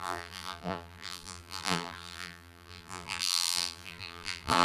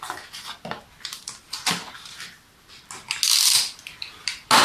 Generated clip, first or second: first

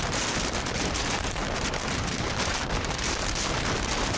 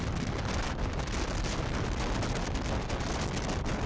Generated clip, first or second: first